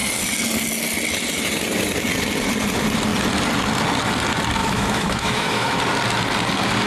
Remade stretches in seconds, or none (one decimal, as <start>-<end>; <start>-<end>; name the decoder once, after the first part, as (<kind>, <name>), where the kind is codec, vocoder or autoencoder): 4.6-5.8 (autoencoder, DAC-VAE)